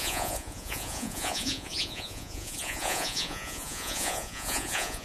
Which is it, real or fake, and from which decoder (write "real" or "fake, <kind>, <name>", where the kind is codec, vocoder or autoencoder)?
fake, vocoder, Vocos